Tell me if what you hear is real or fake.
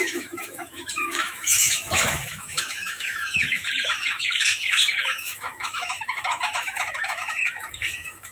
fake